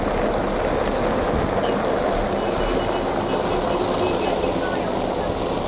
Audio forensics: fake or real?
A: real